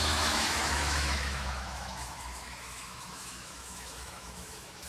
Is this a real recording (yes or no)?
no